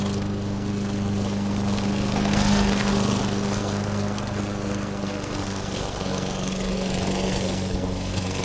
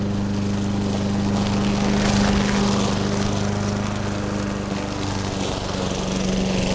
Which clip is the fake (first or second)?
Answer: first